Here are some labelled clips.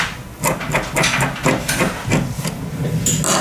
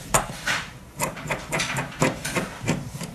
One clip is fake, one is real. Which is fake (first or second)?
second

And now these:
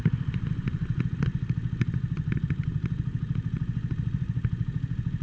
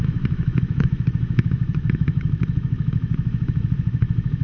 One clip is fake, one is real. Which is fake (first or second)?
second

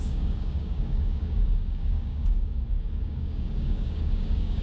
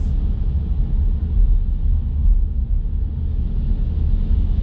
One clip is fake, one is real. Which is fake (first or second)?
first